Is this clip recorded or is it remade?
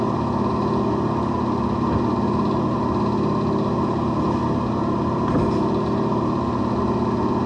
recorded